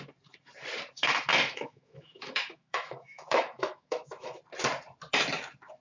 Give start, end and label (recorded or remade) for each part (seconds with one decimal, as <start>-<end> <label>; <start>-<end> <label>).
0.0-1.3 recorded; 1.3-4.4 remade; 4.4-5.8 recorded